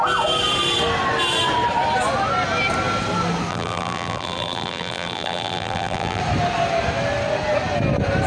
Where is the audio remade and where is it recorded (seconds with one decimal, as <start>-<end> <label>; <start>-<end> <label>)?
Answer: 0.0-3.5 recorded; 3.5-6.2 remade; 6.2-8.3 recorded